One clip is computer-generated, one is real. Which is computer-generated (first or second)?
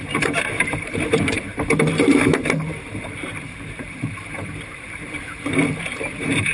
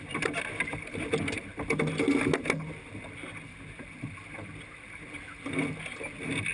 first